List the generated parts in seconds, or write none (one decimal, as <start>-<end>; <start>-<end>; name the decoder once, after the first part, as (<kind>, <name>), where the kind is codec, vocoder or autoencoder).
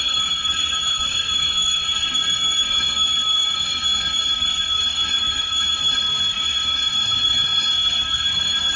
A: 0.0-8.8 (codec, SNAC)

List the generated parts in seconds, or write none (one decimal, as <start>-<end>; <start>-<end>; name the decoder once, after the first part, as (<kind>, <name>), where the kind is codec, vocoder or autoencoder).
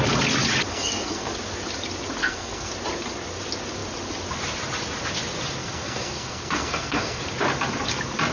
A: 0.7-1.3 (codec, SNAC); 2.2-2.7; 5.6-7.2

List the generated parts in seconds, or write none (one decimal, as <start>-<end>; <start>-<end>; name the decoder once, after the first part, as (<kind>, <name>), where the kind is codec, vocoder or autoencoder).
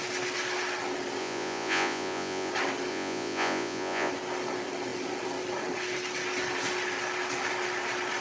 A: 1.2-2.5 (vocoder, Vocos); 2.9-4.1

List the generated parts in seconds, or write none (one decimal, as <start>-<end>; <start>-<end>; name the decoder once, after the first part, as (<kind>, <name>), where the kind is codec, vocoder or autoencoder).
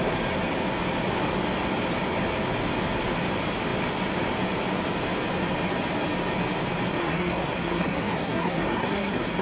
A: 7.0-9.4 (codec, SNAC)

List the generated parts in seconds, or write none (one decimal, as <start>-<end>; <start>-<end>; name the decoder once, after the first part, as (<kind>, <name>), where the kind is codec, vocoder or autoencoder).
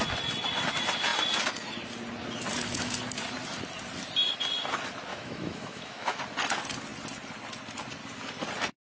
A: 5.1-6.2 (autoencoder, DAC-VAE)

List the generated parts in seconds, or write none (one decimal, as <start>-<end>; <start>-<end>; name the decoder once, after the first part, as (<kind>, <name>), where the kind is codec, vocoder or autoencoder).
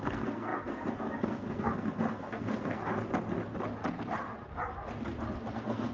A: 0.0-2.8 (codec, SNAC); 5.5-5.9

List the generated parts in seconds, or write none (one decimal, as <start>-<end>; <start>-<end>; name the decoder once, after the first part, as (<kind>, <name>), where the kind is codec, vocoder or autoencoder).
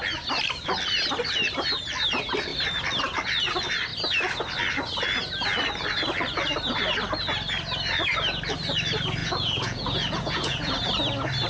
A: 9.2-10.7 (vocoder, Vocos)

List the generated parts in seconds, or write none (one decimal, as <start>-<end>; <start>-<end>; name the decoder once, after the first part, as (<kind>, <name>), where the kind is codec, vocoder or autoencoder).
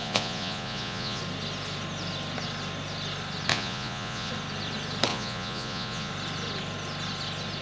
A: 0.0-1.2 (vocoder, Vocos); 3.5-4.3; 5.1-6.1